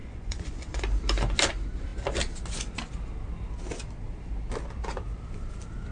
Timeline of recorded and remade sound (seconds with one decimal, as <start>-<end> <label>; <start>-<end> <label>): 0.0-0.8 remade; 0.8-5.9 recorded